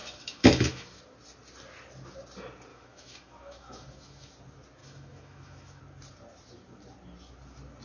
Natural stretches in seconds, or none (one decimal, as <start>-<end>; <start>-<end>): 1.0-2.7; 4.3-4.8; 5.8-7.8